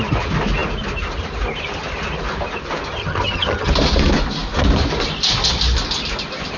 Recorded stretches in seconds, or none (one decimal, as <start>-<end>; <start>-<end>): 0.0-3.0; 3.7-6.6